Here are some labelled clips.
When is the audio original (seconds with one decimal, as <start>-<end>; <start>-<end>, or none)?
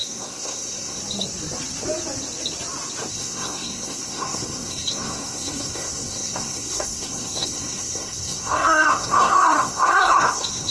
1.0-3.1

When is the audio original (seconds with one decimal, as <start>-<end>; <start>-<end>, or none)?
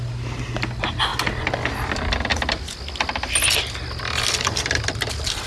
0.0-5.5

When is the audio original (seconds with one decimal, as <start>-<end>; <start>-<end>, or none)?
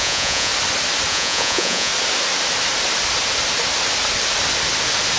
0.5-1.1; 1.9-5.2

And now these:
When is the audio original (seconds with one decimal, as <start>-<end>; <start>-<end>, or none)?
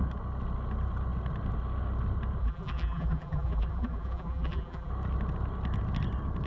0.0-2.4; 4.9-6.5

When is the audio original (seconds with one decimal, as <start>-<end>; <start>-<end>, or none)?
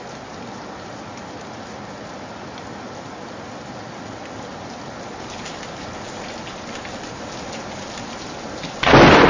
0.0-9.3